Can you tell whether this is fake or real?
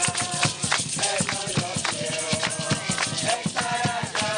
real